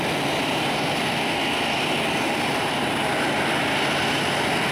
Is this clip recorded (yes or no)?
yes